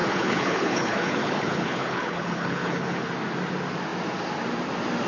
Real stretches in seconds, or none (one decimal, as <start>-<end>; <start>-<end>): 3.1-5.1